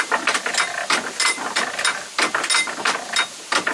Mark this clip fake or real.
real